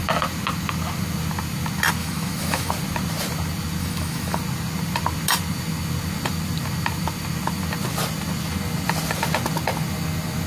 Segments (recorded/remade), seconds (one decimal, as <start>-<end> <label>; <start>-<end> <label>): 0.0-2.0 recorded; 2.0-2.7 remade; 2.7-3.8 recorded; 3.8-4.4 remade; 4.4-10.5 recorded